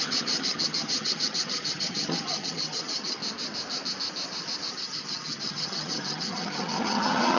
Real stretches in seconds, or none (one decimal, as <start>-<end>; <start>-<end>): 3.2-4.7